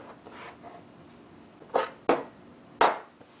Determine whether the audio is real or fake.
real